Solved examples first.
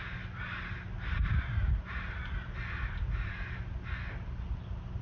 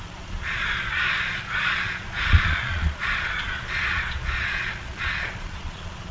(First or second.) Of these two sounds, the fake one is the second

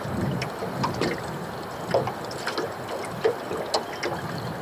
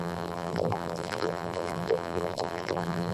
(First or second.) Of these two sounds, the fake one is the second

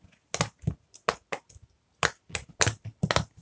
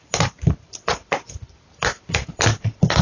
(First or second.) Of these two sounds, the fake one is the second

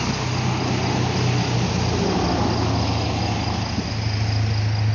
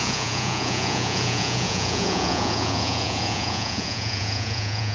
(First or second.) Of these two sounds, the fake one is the second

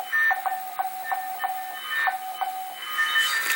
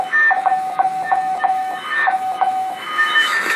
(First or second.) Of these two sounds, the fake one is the second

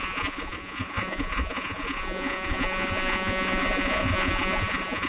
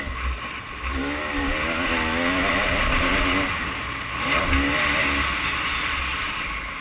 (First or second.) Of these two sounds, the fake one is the first